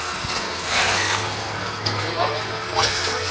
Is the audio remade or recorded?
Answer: remade